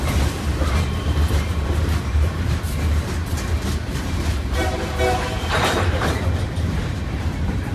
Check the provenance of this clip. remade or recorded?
remade